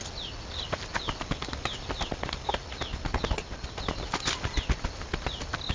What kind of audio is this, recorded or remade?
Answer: recorded